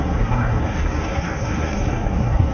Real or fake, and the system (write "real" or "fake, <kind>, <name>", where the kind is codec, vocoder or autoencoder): fake, codec, SNAC